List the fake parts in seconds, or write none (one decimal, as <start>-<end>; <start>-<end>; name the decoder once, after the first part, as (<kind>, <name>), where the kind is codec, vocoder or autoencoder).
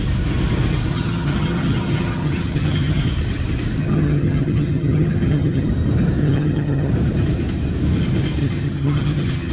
0.9-3.0 (vocoder, HiFi-GAN); 3.8-5.7; 6.2-6.9; 8.4-9.5